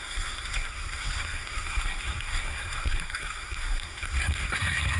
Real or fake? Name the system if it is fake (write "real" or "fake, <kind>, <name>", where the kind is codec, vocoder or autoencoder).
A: fake, codec, SNAC